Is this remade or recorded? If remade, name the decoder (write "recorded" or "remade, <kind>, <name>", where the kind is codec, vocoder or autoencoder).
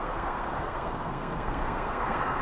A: remade, codec, SNAC